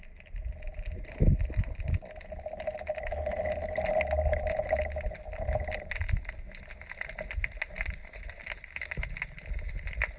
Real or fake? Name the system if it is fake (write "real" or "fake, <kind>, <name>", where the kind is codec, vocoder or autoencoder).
real